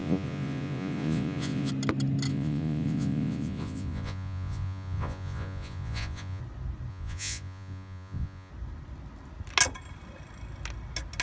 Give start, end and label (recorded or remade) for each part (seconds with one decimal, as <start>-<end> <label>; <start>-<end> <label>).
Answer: 0.0-1.7 remade; 1.7-2.3 recorded; 2.3-6.4 remade; 6.4-6.9 recorded; 6.9-8.5 remade; 8.5-11.2 recorded